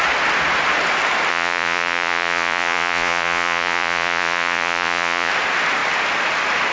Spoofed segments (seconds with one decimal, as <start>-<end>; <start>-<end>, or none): 1.3-5.3